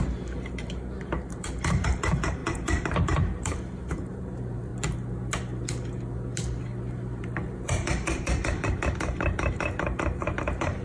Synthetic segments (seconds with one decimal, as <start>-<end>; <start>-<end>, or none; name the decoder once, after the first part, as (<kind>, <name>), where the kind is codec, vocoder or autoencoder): 0.0-4.7 (vocoder, BigVGAN v2); 6.9-10.8